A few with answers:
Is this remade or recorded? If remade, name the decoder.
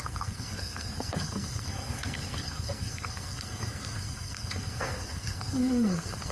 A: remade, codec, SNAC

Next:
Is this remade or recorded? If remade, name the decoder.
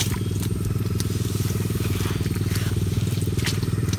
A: recorded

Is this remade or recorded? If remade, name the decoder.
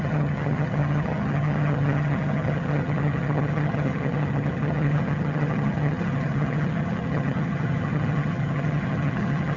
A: remade, vocoder, HiFi-GAN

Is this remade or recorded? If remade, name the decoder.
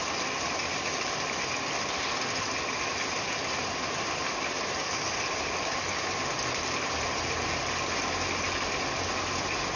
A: recorded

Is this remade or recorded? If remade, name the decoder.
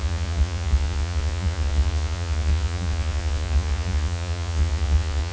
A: remade, vocoder, Vocos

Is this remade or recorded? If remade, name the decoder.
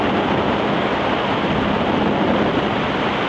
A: recorded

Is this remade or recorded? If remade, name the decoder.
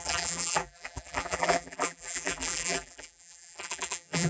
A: remade, vocoder, BigVGAN v2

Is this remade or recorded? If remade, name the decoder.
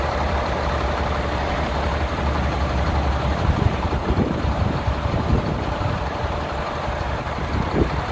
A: remade, vocoder, BigVGAN v2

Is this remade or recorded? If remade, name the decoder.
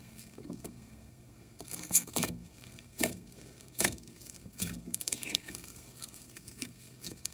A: remade, codec, SNAC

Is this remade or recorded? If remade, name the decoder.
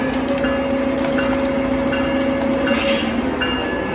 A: recorded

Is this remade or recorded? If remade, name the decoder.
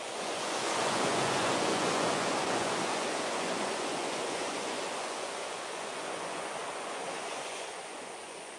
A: remade, vocoder, Vocos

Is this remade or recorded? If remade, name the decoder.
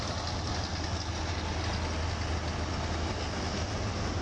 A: recorded